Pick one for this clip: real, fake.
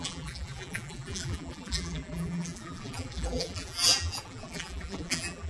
fake